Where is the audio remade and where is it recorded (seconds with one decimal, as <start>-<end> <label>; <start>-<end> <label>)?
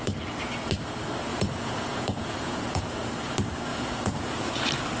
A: 0.0-1.3 recorded; 1.3-3.1 remade; 3.1-3.7 recorded; 3.7-4.5 remade; 4.5-5.0 recorded